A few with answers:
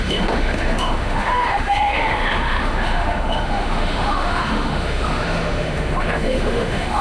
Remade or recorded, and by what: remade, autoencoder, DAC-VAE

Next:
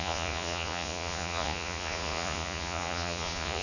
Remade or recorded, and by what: remade, vocoder, Vocos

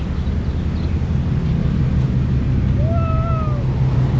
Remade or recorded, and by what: recorded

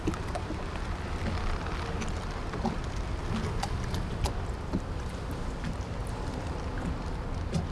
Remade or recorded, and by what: recorded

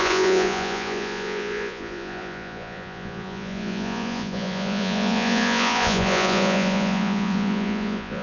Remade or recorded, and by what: remade, vocoder, Vocos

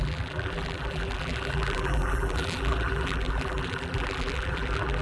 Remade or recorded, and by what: remade, vocoder, BigVGAN v2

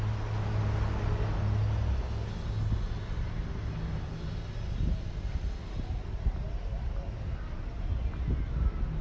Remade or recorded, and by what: recorded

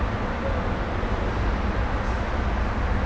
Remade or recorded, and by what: recorded